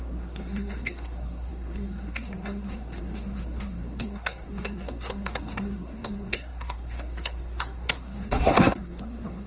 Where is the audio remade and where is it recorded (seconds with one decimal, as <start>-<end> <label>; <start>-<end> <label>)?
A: 0.0-9.5 remade